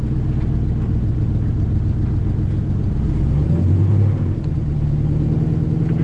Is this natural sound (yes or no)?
yes